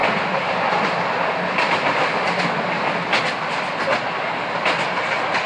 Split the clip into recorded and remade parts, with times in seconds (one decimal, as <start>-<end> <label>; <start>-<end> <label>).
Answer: 0.0-5.5 recorded